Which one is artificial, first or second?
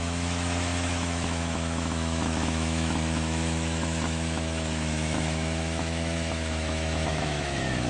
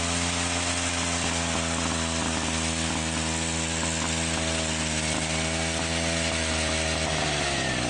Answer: first